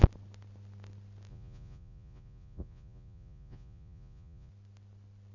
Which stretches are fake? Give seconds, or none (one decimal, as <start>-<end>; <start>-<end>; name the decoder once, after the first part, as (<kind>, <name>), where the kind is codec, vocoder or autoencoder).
1.3-4.5 (vocoder, Vocos)